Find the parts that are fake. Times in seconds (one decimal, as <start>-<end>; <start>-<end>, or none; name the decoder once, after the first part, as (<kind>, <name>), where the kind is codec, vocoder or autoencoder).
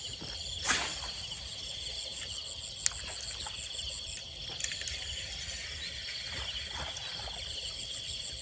none